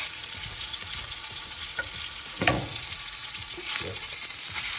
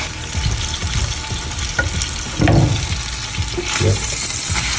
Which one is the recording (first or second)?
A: second